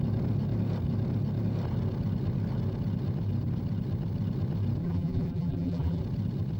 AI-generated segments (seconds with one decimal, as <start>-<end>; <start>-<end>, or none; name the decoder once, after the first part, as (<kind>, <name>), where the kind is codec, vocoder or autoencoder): 4.8-6.0 (vocoder, BigVGAN v2)